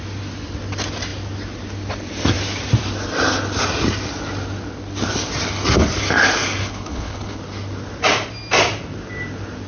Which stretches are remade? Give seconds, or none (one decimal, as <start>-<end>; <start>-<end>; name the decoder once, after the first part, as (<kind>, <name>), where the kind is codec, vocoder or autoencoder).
6.6-7.4 (codec, HILCodec)